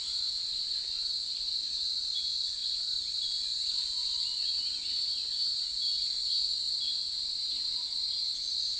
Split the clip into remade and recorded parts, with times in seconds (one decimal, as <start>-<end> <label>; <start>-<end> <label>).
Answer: 0.0-8.8 recorded